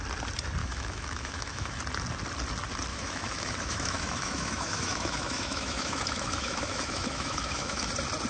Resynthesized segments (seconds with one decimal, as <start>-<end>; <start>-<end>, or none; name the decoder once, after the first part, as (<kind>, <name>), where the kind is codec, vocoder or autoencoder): 0.6-1.8 (autoencoder, DAC-VAE); 2.9-7.9